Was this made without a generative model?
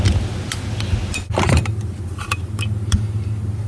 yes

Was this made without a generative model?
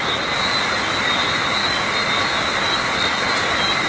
yes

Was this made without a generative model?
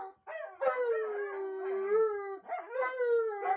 yes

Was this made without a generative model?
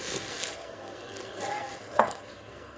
no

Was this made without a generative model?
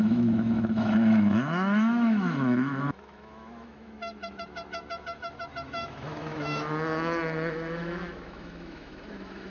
no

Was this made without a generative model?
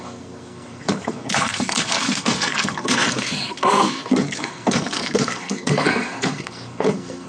no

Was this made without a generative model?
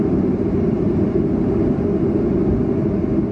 yes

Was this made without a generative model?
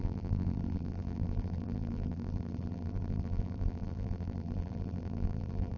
no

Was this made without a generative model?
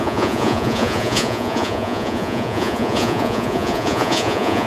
no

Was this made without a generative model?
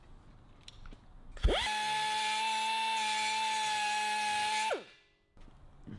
yes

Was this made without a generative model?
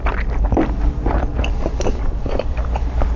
yes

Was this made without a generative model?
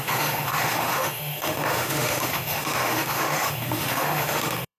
no